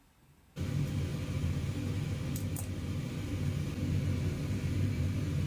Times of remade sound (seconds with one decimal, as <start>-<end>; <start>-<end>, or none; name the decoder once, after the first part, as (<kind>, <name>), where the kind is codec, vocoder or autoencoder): none